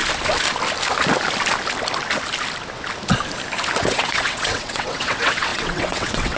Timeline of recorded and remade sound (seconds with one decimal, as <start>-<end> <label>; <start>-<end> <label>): 0.0-3.8 recorded; 3.8-6.4 remade